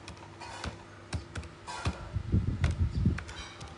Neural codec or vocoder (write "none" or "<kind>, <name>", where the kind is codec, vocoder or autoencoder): none